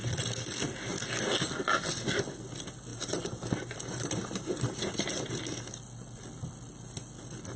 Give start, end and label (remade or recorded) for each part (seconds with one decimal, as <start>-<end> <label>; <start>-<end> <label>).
0.0-2.9 recorded; 2.9-5.4 remade; 5.4-7.6 recorded